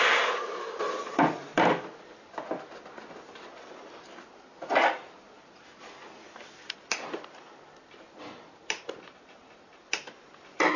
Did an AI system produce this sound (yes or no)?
no